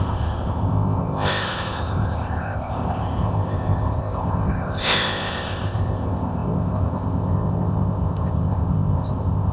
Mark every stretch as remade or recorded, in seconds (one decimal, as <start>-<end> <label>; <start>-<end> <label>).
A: 0.0-9.5 remade